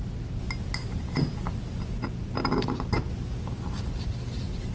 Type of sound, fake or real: real